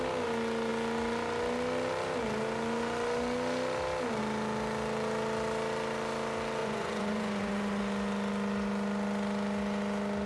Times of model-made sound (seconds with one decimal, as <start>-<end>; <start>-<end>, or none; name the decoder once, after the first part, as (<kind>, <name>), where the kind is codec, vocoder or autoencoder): 6.6-7.8 (vocoder, Vocos)

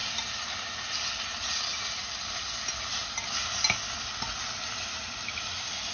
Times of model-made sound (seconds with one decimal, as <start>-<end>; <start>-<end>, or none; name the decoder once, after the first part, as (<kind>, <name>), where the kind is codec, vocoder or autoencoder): none

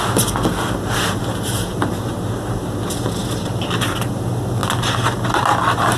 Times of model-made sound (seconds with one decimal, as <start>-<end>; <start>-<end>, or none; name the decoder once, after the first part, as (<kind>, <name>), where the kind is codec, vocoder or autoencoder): none

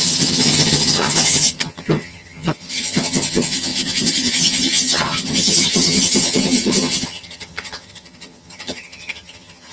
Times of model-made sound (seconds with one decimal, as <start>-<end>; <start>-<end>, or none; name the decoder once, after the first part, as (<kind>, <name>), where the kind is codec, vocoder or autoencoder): 0.0-9.7 (vocoder, HiFi-GAN)